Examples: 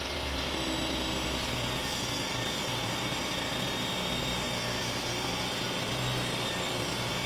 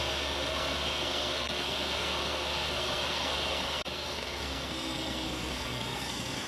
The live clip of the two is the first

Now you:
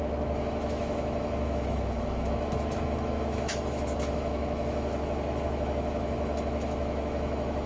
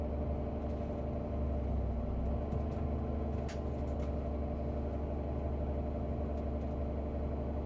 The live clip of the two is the second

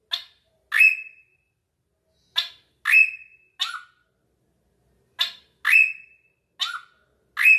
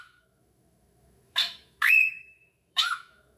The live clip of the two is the first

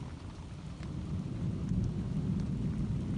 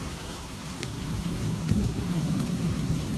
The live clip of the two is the first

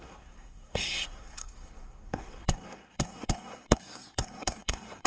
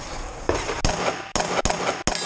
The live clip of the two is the second